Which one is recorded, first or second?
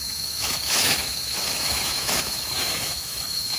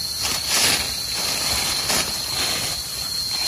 second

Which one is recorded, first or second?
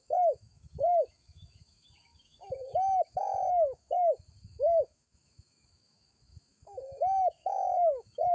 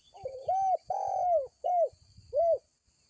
second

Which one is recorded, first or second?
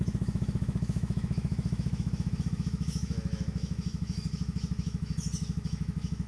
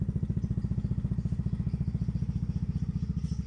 second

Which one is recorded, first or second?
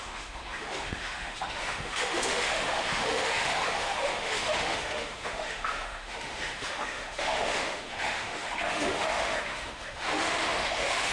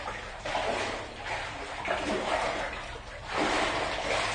second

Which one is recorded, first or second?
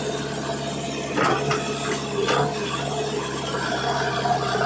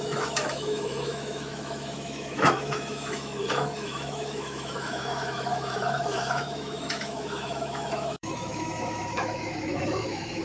first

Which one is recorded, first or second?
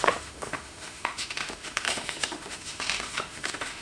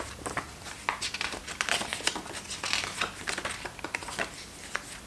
second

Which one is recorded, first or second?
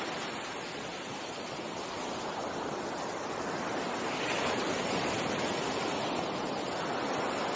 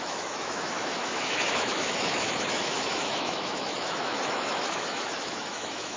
first